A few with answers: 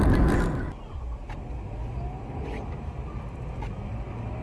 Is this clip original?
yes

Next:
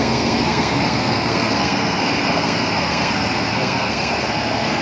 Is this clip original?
no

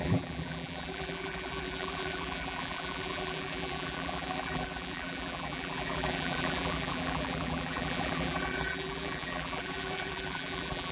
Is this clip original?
no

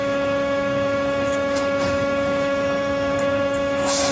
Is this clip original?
no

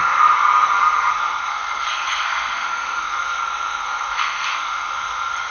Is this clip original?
no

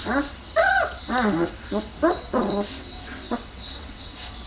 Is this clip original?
no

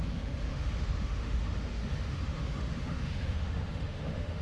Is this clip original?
no